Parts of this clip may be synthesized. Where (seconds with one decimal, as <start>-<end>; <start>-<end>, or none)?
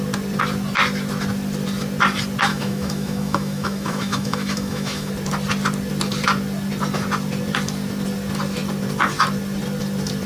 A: 2.5-5.1